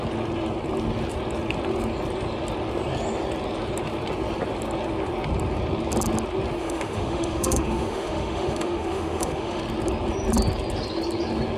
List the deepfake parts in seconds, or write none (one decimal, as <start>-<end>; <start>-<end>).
6.6-9.6